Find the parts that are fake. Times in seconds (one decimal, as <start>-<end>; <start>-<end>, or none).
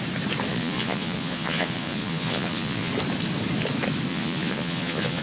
0.5-2.9; 4.1-5.2